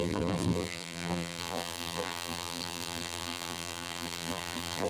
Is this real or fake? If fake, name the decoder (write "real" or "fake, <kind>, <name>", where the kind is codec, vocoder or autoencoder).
fake, vocoder, BigVGAN v2